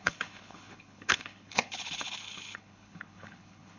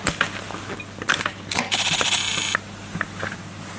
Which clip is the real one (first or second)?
second